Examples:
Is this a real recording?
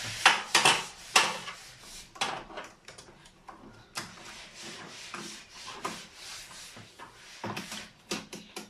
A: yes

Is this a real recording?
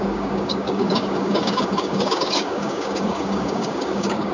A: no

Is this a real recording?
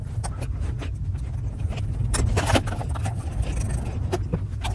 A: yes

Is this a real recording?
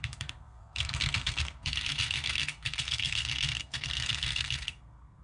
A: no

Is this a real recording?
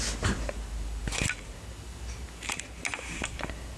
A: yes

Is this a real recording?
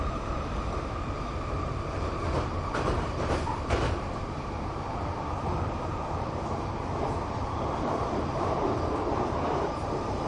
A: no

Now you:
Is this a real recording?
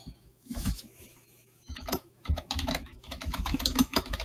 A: no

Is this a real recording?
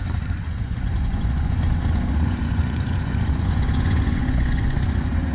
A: no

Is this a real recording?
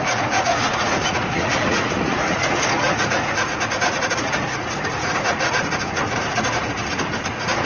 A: no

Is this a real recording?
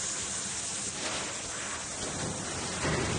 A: yes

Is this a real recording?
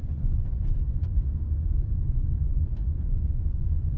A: no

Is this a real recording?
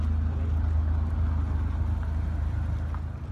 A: yes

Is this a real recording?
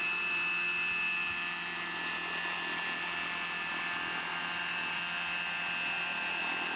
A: yes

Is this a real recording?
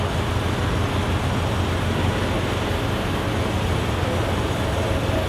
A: yes